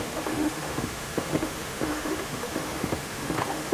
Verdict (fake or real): fake